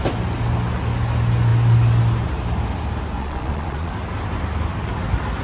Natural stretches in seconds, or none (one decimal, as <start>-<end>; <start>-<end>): 0.0-3.2; 3.9-5.4